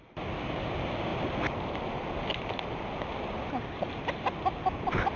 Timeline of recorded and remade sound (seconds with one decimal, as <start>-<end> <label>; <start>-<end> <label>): 0.0-5.2 recorded